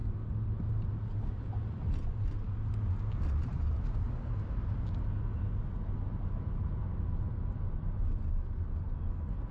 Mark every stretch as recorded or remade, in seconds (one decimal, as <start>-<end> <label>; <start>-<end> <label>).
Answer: 0.0-9.5 recorded